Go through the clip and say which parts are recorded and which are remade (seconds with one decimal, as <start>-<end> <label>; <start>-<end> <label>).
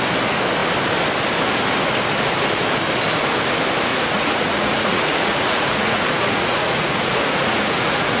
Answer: 0.0-3.9 recorded; 3.9-8.2 remade